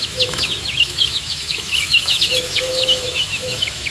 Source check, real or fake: fake